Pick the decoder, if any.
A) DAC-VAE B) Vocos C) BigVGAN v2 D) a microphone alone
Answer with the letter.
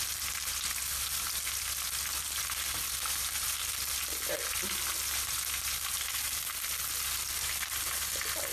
D